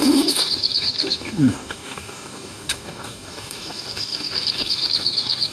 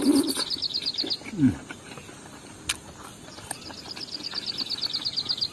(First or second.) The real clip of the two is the second